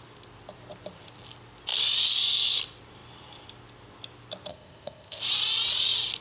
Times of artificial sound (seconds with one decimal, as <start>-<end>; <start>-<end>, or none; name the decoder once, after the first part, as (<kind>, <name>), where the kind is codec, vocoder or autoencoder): 4.5-5.2 (codec, ZipCodec)

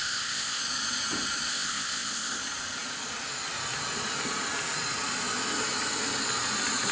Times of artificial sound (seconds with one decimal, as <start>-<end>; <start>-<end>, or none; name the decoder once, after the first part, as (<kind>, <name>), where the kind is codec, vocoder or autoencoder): 0.0-0.6 (codec, ZipCodec); 1.5-2.4